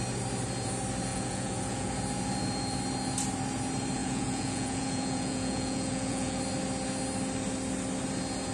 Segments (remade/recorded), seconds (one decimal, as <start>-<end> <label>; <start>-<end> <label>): 0.0-1.1 recorded; 1.1-1.9 remade; 1.9-4.0 recorded; 4.0-6.4 remade; 6.4-8.5 recorded